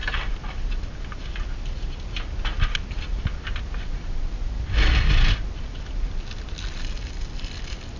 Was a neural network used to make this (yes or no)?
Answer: no